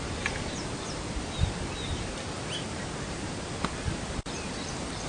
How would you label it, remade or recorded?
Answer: recorded